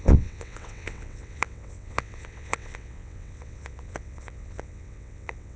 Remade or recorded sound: remade